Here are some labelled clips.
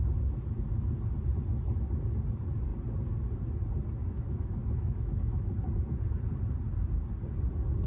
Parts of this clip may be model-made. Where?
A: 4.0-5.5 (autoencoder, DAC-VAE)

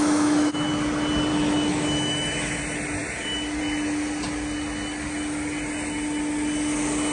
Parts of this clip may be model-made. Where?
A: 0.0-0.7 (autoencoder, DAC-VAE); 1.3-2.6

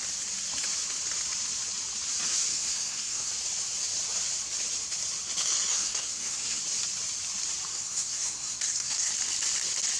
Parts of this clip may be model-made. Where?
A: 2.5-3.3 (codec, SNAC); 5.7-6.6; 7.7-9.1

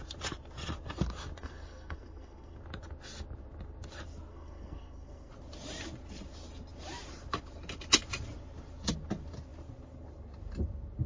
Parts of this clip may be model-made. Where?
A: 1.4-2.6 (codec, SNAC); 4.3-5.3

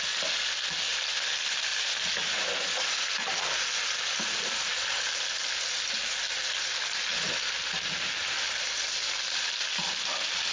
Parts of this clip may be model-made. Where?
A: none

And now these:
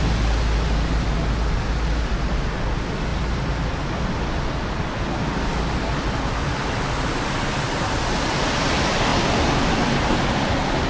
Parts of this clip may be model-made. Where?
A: 3.1-4.5 (vocoder, BigVGAN v2)